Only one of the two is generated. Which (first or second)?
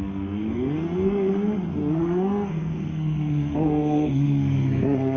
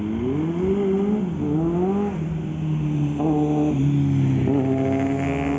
first